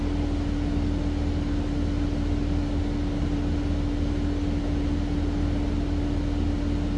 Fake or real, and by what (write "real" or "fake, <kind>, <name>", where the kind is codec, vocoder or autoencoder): real